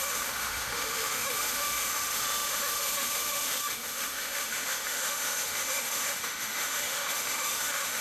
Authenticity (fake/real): fake